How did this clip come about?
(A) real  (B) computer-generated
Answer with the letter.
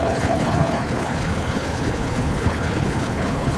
B